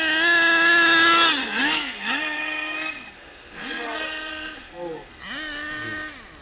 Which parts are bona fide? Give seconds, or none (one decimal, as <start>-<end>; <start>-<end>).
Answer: 0.0-1.4; 5.2-6.4